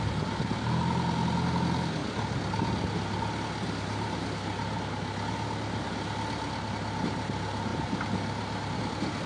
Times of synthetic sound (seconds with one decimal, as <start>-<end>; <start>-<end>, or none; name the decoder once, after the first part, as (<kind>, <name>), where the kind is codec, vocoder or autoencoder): none